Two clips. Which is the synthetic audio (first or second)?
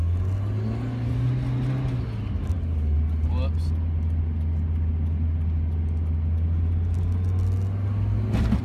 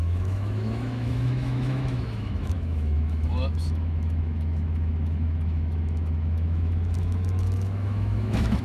second